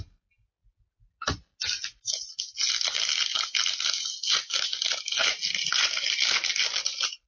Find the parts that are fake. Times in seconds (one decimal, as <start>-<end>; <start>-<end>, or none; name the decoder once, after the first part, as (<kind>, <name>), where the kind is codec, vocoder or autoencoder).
none

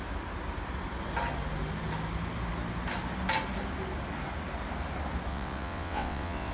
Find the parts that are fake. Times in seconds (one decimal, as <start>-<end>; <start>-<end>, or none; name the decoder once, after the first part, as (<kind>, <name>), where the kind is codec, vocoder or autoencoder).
5.3-6.5 (vocoder, WaveNeXt)

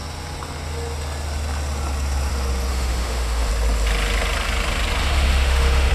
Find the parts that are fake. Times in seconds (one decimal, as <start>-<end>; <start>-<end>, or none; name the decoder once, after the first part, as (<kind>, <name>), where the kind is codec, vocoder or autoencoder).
2.7-3.5 (autoencoder, DAC-VAE); 5.0-5.9

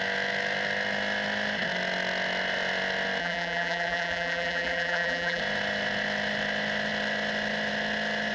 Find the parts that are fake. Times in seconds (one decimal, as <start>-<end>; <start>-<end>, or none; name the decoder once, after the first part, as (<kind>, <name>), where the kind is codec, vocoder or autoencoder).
3.2-5.4 (vocoder, BigVGAN v2)

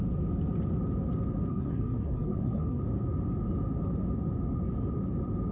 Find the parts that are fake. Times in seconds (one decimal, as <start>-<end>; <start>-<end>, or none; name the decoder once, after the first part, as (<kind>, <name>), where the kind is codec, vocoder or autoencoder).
1.5-2.8 (codec, SNAC)

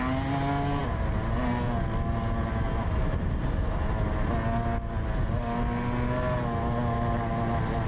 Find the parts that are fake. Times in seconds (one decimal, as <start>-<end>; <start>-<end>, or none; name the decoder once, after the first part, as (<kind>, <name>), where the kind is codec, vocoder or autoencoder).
none